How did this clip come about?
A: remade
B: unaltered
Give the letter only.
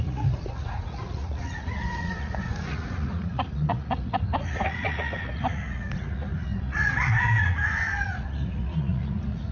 A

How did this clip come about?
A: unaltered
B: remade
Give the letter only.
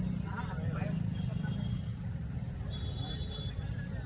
A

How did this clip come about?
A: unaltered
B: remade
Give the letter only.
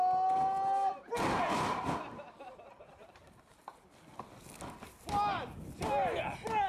A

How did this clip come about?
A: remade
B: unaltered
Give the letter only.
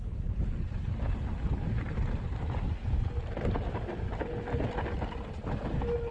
B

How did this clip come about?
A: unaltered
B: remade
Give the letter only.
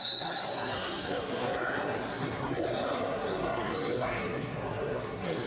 B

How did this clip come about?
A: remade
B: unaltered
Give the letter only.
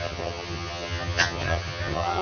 A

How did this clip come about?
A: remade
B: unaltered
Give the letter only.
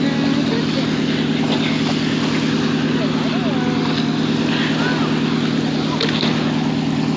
B